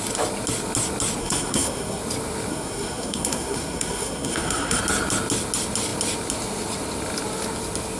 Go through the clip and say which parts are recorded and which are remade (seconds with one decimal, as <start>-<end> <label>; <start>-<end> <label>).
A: 0.0-1.2 recorded; 1.2-2.0 remade; 2.0-2.5 recorded; 2.5-4.8 remade; 4.8-8.0 recorded